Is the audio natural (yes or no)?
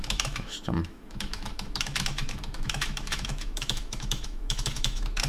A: no